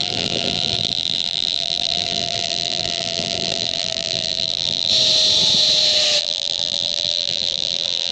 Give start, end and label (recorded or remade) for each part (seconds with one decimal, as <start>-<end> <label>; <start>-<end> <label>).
0.0-4.9 remade; 4.9-6.2 recorded; 6.2-8.1 remade